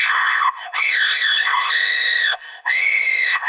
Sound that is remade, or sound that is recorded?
remade